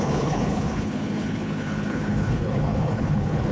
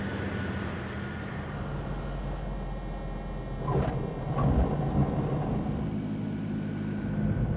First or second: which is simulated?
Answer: first